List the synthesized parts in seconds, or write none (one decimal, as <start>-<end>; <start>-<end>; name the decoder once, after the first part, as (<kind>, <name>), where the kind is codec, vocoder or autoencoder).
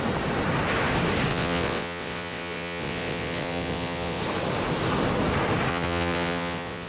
1.3-4.2 (vocoder, WaveNeXt); 5.7-6.9